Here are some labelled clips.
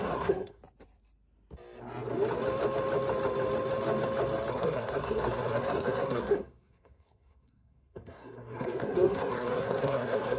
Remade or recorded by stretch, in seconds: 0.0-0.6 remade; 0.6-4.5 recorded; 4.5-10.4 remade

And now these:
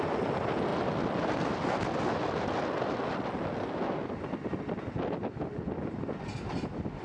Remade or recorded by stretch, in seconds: 0.0-7.0 recorded

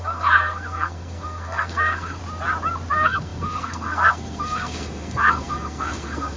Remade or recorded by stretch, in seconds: 0.0-2.2 remade; 2.2-2.9 recorded; 2.9-6.4 remade

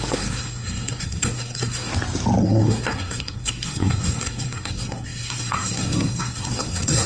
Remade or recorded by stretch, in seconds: 0.0-1.9 remade; 1.9-2.4 recorded; 2.4-7.1 remade

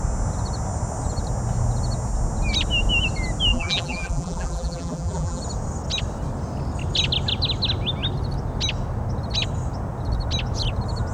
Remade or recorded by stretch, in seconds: 0.0-3.5 recorded; 3.5-5.4 remade; 5.4-11.1 recorded